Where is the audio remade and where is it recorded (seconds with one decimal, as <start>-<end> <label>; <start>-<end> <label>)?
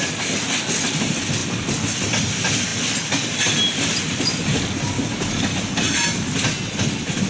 0.0-7.3 recorded